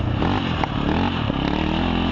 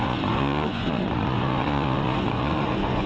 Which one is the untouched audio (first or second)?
first